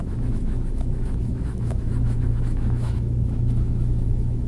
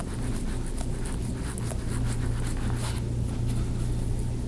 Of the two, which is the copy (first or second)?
first